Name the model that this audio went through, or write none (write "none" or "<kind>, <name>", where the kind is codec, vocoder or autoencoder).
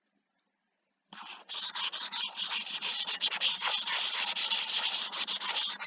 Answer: none